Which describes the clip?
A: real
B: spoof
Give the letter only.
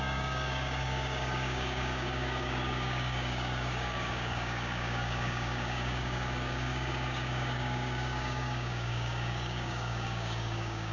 B